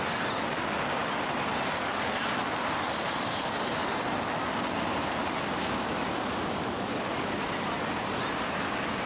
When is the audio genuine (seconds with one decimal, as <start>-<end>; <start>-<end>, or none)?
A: 0.0-1.0; 4.1-5.9